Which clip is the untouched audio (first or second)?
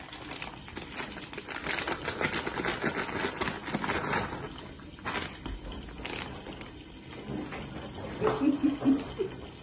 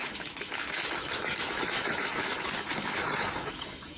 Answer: first